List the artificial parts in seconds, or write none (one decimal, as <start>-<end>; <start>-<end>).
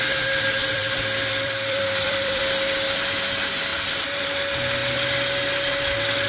0.6-2.4; 3.7-4.2